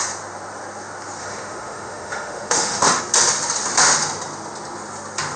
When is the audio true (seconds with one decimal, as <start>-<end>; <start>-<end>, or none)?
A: 0.0-1.2; 3.0-5.4